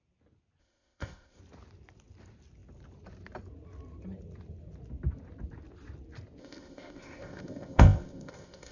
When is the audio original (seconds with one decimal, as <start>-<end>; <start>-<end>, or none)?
0.0-0.6; 1.4-6.4